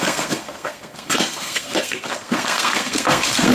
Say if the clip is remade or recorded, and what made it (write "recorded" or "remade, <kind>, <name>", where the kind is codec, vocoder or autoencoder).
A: remade, codec, SNAC